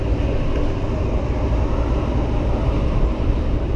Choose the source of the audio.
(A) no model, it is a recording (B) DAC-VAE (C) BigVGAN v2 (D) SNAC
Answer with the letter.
A